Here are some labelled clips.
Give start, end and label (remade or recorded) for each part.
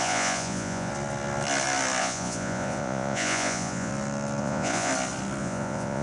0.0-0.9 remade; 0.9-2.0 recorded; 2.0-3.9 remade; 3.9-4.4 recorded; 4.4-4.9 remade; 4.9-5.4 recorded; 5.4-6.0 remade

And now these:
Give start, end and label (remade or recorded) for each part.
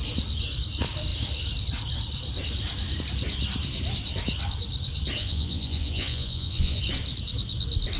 0.0-5.2 recorded; 5.2-6.8 remade; 6.8-8.0 recorded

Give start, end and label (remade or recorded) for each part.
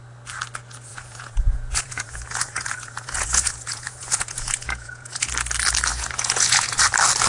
0.0-0.9 recorded; 0.9-5.3 remade; 5.3-5.9 recorded; 5.9-6.8 remade; 6.8-7.3 recorded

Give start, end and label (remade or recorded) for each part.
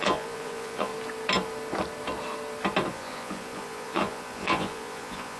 0.0-0.9 remade; 0.9-2.9 recorded; 2.9-5.4 remade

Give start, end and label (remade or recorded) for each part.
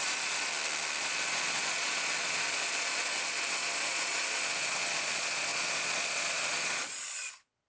0.0-0.5 remade; 0.5-1.0 recorded; 1.0-7.7 remade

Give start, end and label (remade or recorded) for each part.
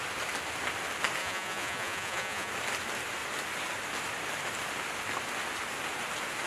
0.0-1.2 recorded; 1.2-2.5 remade; 2.5-6.5 recorded